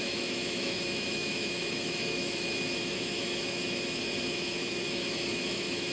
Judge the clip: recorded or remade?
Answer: remade